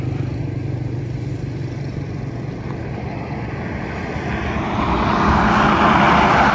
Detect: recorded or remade recorded